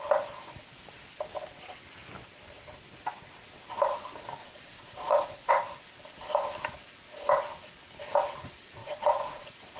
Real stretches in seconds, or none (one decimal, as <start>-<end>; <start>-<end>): 0.0-4.4; 5.5-8.8; 9.4-9.8